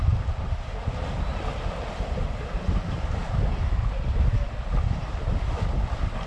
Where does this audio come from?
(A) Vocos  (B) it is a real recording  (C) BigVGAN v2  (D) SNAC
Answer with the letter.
B